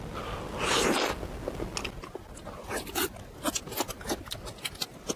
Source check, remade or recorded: recorded